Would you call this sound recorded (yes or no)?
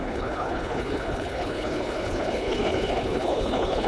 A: no